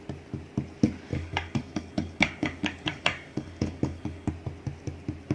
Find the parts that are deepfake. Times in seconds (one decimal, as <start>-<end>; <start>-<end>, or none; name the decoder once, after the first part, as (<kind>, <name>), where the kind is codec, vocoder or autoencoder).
1.1-4.3 (codec, DAC)

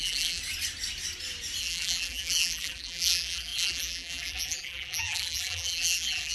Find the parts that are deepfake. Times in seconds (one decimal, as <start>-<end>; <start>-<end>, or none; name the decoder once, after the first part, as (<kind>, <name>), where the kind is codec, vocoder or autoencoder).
0.0-0.4 (vocoder, BigVGAN v2); 1.6-6.3

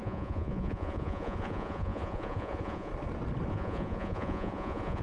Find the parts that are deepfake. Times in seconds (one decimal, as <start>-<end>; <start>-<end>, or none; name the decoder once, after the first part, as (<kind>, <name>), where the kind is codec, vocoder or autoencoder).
0.0-2.9 (vocoder, Vocos); 3.5-5.0

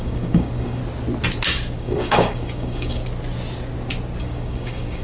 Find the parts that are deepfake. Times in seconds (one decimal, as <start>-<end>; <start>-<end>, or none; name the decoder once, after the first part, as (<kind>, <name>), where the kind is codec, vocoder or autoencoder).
0.0-0.8 (codec, DAC); 1.8-3.0; 4.2-5.0

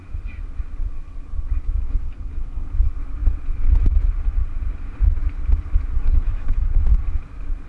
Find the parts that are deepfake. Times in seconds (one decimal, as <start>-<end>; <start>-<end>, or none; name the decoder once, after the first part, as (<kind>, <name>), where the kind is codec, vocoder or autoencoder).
1.8-2.7 (codec, SNAC); 5.9-6.8

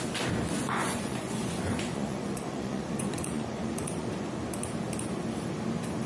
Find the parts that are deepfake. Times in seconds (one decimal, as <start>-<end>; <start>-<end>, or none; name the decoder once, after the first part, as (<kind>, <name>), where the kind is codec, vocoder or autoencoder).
0.6-4.3 (vocoder, Vocos)